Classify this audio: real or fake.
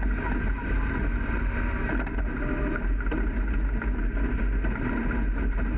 real